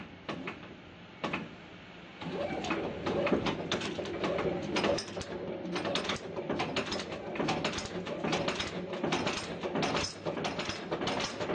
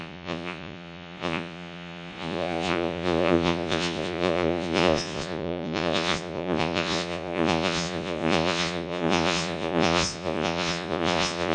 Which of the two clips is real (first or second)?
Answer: first